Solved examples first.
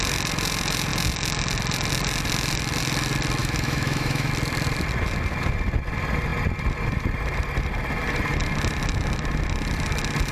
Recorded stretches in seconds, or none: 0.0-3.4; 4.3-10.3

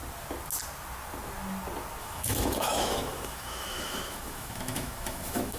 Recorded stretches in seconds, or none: 0.0-2.0

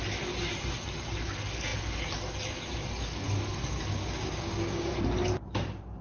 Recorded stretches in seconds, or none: 0.0-3.9; 4.9-6.0

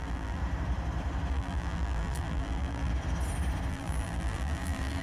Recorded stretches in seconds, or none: 0.4-1.3; 2.9-3.7

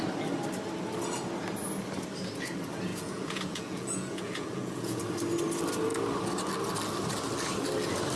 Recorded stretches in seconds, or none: 0.0-2.9; 5.0-8.2

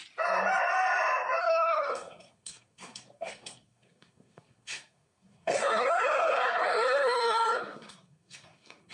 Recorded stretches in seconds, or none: 0.0-1.4

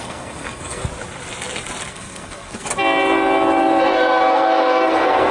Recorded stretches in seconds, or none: 0.8-1.9; 2.7-3.6

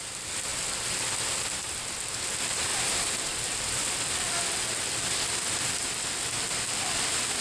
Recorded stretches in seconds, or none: 0.0-2.7; 3.9-7.4